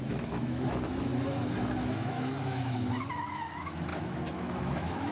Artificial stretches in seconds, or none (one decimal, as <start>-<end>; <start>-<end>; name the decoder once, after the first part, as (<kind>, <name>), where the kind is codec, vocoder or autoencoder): 0.0-1.1 (autoencoder, DAC-VAE); 1.9-5.1